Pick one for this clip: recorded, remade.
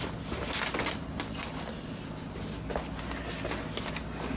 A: recorded